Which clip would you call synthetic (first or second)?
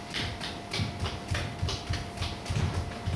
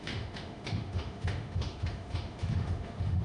second